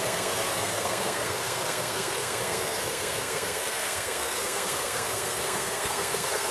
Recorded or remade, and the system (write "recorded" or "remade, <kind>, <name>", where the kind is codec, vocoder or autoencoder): remade, codec, SNAC